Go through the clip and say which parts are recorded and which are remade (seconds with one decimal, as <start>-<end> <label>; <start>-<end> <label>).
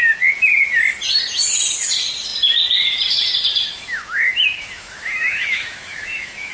0.0-3.7 recorded; 3.7-6.5 remade